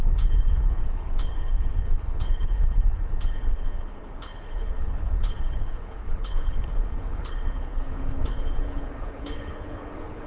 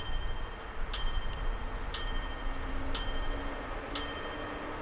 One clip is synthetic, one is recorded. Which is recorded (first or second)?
second